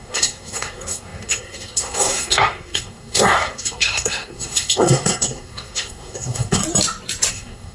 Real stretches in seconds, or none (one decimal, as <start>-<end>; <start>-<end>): 6.6-7.3